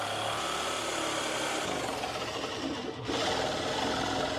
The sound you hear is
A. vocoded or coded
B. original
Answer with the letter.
B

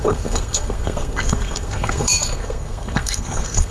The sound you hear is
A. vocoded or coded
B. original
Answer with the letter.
A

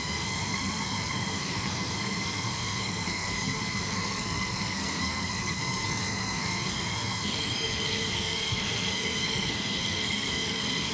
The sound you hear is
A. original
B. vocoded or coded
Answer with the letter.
B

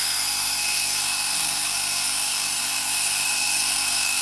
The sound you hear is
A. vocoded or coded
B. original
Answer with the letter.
A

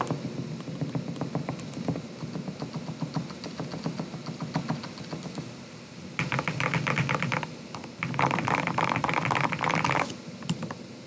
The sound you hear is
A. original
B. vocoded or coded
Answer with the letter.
A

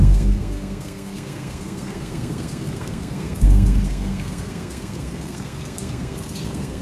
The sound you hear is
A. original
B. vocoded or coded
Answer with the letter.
B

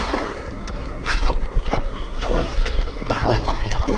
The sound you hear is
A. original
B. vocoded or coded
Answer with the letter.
B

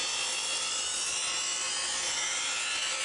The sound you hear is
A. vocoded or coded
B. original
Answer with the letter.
B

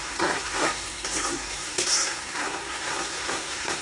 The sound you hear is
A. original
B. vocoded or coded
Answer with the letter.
B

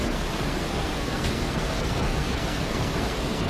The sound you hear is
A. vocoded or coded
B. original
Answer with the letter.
A